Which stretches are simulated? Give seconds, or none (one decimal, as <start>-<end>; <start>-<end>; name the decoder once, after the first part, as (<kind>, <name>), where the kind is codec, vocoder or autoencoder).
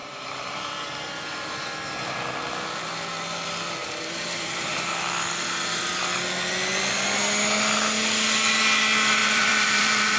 0.0-0.7 (vocoder, BigVGAN v2); 3.8-6.0; 9.2-10.2